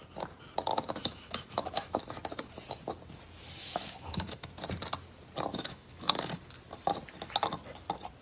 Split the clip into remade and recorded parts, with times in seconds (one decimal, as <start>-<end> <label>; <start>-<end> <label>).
0.0-0.7 recorded; 0.7-2.0 remade; 2.0-3.6 recorded; 3.6-4.5 remade; 4.5-5.5 recorded; 5.5-6.1 remade; 6.1-8.2 recorded